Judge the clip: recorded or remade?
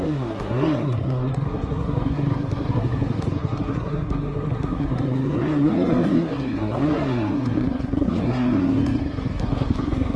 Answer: remade